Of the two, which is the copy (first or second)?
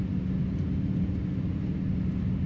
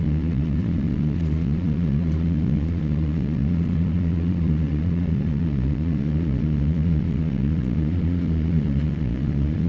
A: second